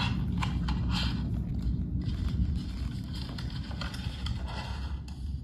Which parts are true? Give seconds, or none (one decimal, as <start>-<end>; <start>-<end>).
0.0-5.4